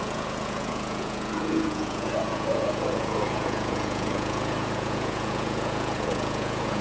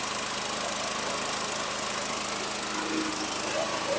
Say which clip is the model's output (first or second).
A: first